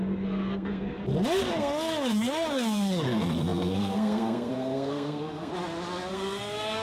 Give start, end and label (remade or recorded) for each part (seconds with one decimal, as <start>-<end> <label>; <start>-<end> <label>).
0.0-1.0 remade; 1.0-1.5 recorded; 1.5-5.5 remade; 5.5-6.1 recorded; 6.1-6.8 remade